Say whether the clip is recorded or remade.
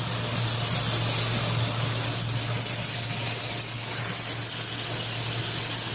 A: recorded